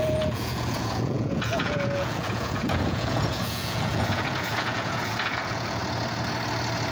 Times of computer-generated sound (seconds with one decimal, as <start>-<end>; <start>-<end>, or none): 0.0-5.8

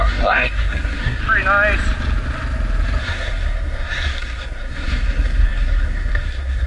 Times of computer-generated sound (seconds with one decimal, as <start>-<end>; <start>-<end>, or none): 0.0-1.2; 3.0-6.7

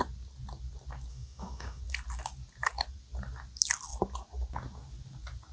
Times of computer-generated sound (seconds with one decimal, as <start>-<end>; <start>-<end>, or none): 1.1-1.8

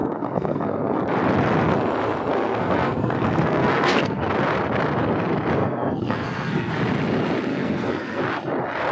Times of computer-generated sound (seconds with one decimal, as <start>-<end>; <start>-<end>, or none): 0.0-1.0; 2.3-4.2; 5.6-6.7; 7.5-8.2

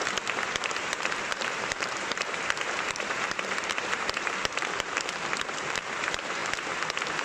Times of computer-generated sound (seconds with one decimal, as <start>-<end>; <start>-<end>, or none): 0.6-6.4

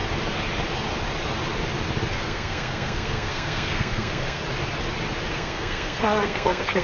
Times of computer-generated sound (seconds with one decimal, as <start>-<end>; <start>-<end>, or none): 2.1-4.4; 5.3-6.8

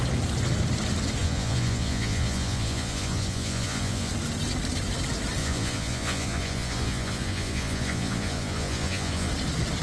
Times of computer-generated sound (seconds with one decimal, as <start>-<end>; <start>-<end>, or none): 1.2-4.1; 5.4-9.3

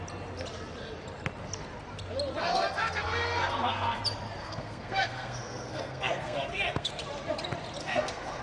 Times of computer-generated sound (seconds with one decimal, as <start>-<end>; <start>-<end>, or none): 2.4-4.0; 4.4-6.9; 7.8-8.4